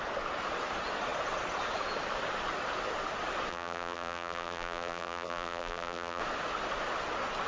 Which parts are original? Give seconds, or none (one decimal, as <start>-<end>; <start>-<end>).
0.0-3.5; 6.2-7.5